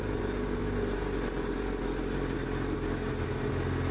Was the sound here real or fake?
real